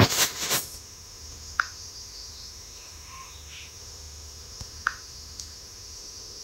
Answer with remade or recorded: remade